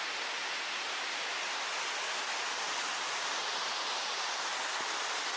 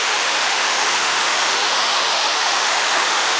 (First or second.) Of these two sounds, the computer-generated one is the second